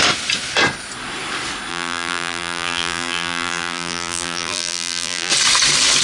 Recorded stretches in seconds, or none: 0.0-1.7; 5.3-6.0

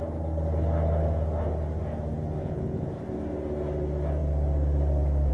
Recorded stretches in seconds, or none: 0.0-2.4; 2.9-5.3

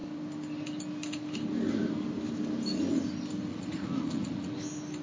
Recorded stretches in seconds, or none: 0.0-3.5; 4.5-5.0